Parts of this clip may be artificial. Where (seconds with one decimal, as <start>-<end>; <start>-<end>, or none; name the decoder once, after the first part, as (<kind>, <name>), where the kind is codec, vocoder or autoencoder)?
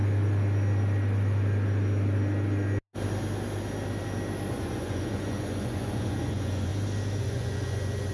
4.5-6.7 (vocoder, Vocos); 7.2-8.1